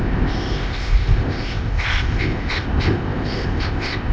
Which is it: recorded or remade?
remade